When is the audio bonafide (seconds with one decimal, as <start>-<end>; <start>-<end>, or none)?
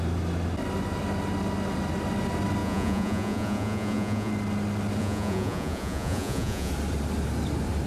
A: 0.0-2.6; 4.3-5.0; 6.7-7.9